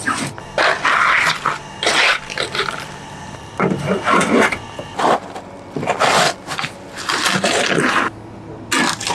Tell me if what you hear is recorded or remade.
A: recorded